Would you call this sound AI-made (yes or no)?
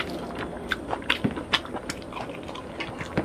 no